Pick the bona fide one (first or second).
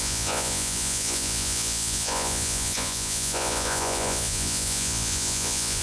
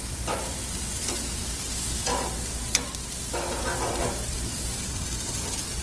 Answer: second